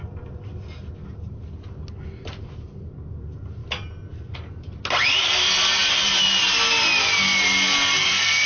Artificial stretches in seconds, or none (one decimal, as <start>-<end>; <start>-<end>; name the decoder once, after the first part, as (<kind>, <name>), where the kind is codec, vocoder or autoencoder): 8.0-8.5 (codec, SNAC)